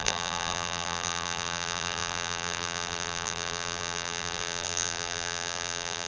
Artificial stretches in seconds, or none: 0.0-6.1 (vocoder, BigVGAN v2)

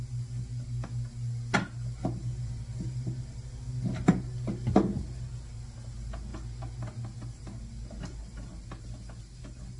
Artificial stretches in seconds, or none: none

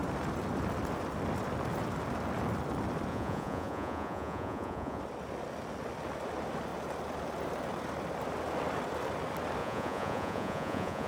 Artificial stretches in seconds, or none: 3.1-5.0 (vocoder, Vocos); 9.6-11.1

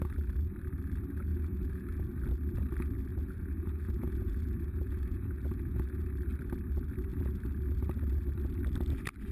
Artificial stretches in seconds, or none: 1.3-2.0 (vocoder, Vocos); 3.1-6.1

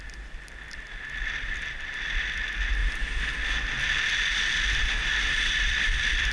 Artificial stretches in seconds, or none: 0.0-2.8 (vocoder, BigVGAN v2); 4.0-6.3

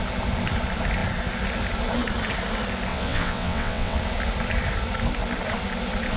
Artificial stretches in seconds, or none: 2.9-4.0 (vocoder, WaveNeXt)